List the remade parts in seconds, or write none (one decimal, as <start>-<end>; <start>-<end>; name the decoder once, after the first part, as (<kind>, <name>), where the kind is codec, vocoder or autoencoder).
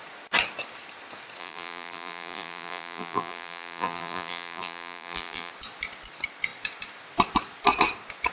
1.4-5.5 (vocoder, BigVGAN v2)